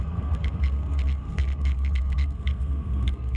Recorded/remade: remade